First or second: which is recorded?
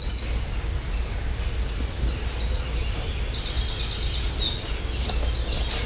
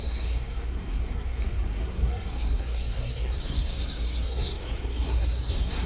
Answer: first